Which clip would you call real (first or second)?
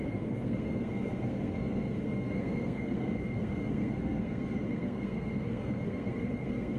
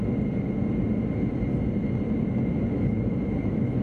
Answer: second